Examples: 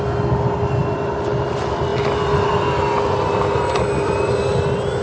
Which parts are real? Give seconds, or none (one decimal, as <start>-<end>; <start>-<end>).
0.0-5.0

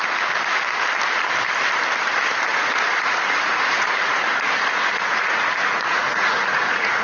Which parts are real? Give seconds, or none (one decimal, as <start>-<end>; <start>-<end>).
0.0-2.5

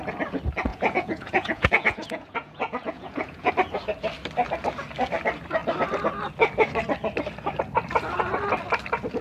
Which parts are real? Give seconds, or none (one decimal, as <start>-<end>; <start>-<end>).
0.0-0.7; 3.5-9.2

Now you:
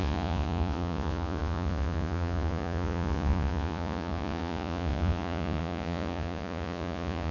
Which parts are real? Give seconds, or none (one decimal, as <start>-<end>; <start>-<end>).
none

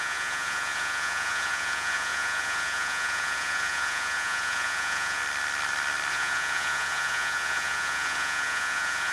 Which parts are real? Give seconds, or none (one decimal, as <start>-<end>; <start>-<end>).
5.2-6.1